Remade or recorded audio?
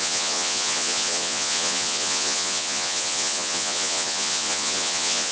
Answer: remade